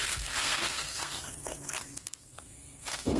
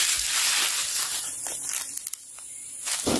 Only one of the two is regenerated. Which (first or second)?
first